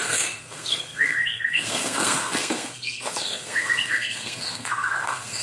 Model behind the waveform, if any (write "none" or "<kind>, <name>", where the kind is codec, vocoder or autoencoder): codec, SNAC